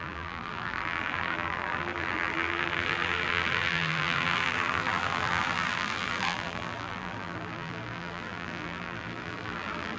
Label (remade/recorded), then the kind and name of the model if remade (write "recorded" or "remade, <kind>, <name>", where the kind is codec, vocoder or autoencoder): remade, vocoder, BigVGAN v2